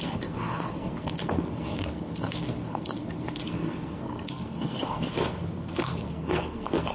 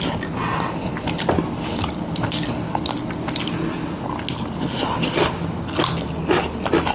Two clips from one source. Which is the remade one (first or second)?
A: first